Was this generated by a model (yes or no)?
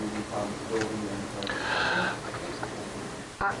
no